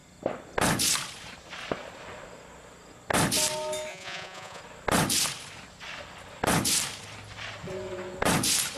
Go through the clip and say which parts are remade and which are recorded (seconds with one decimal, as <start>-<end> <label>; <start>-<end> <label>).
0.0-3.9 recorded; 3.9-4.6 remade; 4.6-8.8 recorded